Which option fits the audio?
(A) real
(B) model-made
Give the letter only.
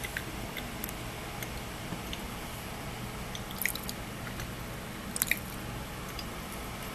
A